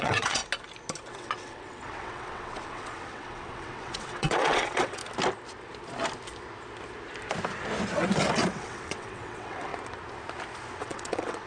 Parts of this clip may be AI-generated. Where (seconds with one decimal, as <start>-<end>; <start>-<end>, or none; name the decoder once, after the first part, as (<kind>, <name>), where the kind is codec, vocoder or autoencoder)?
0.0-0.4 (vocoder, WaveNeXt); 1.1-5.0; 8.5-9.7; 10.8-11.5